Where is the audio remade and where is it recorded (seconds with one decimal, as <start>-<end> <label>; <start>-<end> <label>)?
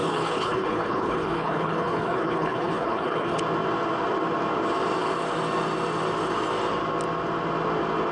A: 0.0-3.4 remade; 3.4-8.1 recorded